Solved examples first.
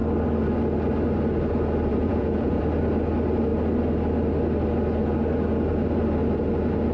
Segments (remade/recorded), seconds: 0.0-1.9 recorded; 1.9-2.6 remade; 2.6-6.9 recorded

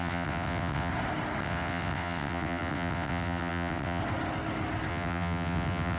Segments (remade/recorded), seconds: 0.0-0.9 remade; 0.9-1.4 recorded; 1.4-4.0 remade; 4.0-4.9 recorded; 4.9-6.0 remade

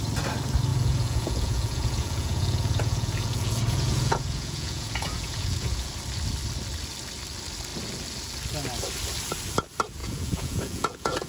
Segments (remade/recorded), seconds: 0.0-0.7 recorded; 0.7-5.9 remade; 5.9-10.0 recorded; 10.0-11.3 remade

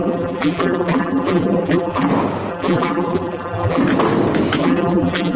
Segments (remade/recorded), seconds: 0.0-2.1 remade; 2.1-2.5 recorded; 2.5-3.8 remade; 3.8-4.6 recorded; 4.6-5.4 remade